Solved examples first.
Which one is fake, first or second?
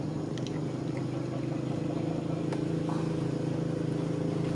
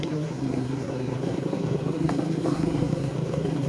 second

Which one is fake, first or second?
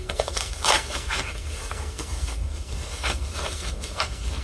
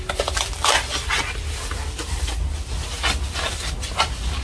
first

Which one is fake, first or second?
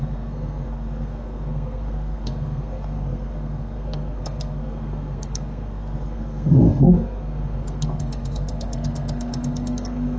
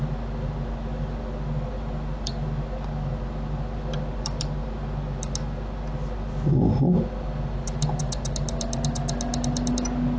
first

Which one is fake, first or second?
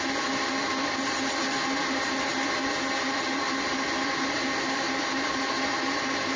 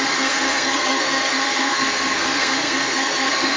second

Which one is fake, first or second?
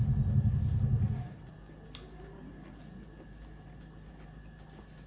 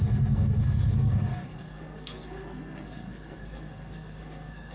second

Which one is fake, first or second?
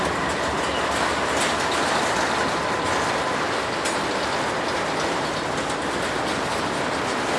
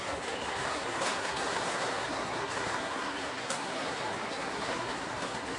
second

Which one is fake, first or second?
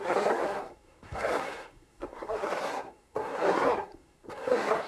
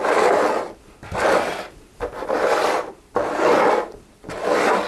first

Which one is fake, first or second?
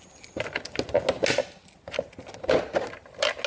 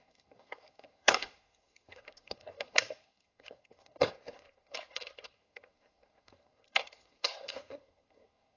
second